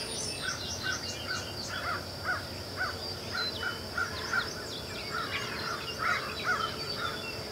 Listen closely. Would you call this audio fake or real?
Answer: real